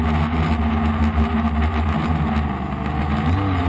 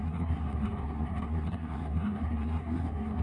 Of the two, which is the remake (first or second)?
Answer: second